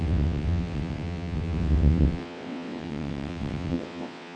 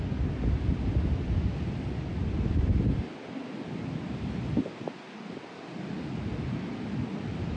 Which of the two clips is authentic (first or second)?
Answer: second